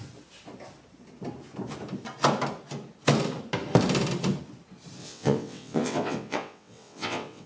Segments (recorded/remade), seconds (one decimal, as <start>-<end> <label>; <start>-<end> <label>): 0.0-5.0 recorded; 5.0-7.5 remade